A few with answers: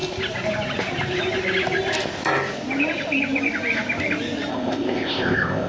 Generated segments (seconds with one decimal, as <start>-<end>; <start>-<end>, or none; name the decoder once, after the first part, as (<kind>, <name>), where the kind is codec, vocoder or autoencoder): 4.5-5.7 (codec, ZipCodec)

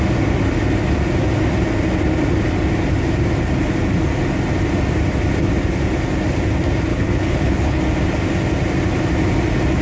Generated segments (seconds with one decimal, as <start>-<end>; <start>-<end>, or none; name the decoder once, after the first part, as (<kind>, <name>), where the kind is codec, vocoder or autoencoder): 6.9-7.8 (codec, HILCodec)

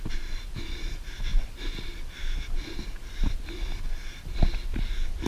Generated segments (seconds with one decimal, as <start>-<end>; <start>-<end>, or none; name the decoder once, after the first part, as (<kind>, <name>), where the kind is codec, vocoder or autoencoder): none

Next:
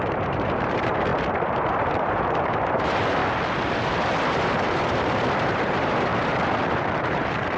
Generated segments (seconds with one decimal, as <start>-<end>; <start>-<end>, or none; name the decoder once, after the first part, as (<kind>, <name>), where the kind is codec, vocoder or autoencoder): 0.0-1.1 (vocoder, BigVGAN v2); 1.7-3.2; 3.9-6.1; 7.0-7.6

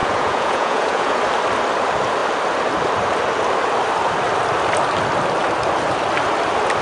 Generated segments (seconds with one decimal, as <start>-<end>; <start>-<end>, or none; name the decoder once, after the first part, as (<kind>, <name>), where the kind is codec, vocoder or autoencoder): 0.0-1.2 (vocoder, Vocos)